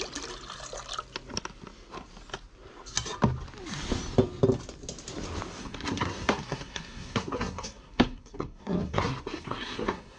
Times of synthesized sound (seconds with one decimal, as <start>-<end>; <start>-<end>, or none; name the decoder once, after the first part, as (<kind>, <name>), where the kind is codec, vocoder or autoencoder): 5.6-10.2 (codec, SNAC)